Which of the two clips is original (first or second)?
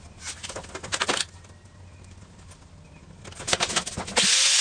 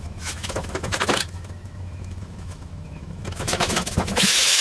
first